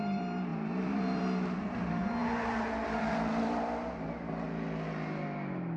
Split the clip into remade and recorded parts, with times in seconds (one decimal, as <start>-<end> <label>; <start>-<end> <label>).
0.0-0.5 recorded; 0.5-1.2 remade; 1.2-5.8 recorded